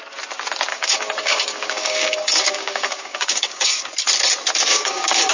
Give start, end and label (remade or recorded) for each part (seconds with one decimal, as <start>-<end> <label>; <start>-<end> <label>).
0.0-0.7 recorded; 0.7-3.9 remade; 3.9-4.7 recorded; 4.7-5.3 remade